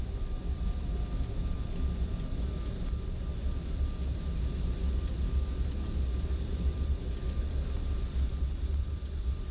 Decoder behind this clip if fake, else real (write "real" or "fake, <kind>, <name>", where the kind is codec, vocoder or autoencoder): real